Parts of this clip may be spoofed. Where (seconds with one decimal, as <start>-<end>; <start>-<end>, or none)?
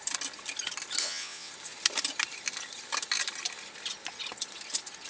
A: 1.0-1.5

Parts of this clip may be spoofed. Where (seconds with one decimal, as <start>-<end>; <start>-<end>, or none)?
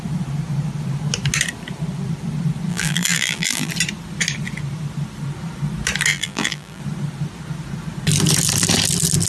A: 2.7-3.7; 6.1-6.8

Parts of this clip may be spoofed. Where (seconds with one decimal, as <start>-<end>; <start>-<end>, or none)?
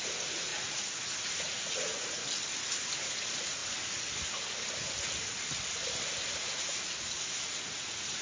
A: 0.0-2.2; 3.0-3.6; 6.4-8.2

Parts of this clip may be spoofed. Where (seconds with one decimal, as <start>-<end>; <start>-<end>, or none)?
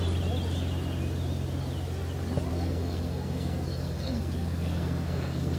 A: 2.5-5.6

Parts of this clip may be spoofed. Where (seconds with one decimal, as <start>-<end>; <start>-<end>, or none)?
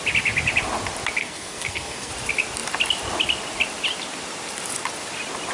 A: 1.2-2.1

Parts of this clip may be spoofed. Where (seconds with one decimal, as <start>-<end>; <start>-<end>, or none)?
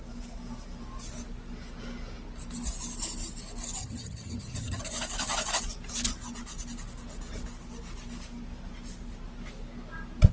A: 3.8-4.8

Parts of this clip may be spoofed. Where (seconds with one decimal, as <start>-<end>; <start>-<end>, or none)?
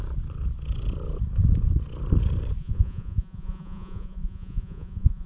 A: 2.6-5.3